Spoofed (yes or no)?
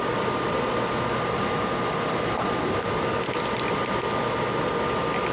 no